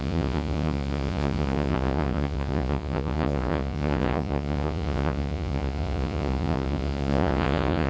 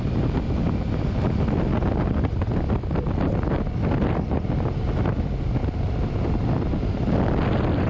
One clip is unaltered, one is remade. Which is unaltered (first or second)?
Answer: second